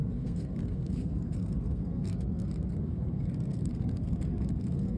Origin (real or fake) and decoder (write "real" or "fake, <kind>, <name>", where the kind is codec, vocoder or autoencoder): fake, codec, SNAC